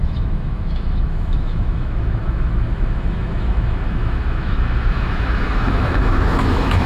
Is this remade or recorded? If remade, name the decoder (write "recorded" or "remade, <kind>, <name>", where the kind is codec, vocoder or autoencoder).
remade, autoencoder, DAC-VAE